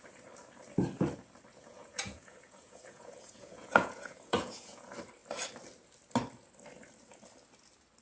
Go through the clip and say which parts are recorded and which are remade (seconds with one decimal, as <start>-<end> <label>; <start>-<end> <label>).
0.0-1.5 recorded; 1.5-4.8 remade; 4.8-8.0 recorded

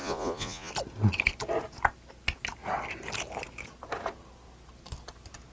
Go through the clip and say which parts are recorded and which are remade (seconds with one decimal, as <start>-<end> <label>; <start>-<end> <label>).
0.0-0.7 remade; 0.7-5.5 recorded

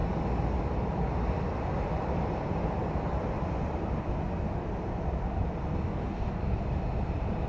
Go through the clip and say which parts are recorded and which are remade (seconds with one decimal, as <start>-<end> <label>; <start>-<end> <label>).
0.0-5.7 recorded; 5.7-6.4 remade; 6.4-7.5 recorded

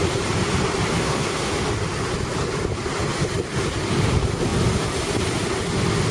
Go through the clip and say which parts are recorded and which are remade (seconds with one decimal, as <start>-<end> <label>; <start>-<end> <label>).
0.0-1.0 recorded; 1.0-1.5 remade; 1.5-6.1 recorded

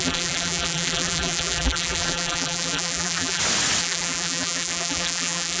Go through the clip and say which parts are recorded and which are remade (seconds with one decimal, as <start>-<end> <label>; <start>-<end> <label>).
0.0-3.4 remade; 3.4-3.8 recorded; 3.8-5.6 remade